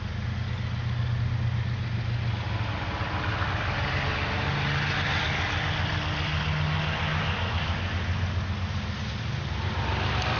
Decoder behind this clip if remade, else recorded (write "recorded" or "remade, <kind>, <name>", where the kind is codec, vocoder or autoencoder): recorded